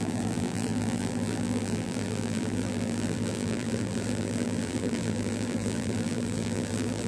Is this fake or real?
fake